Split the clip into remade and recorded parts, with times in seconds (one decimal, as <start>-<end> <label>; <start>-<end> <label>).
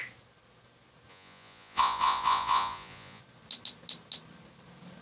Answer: 0.0-1.1 recorded; 1.1-3.2 remade; 3.2-5.0 recorded